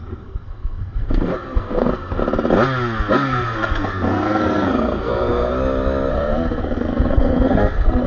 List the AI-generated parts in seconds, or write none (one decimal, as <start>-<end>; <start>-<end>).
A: 0.0-2.2; 3.1-5.5; 6.1-8.1